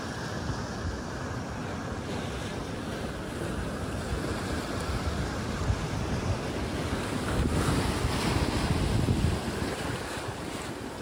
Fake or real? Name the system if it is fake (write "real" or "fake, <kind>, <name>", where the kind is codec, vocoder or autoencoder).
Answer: real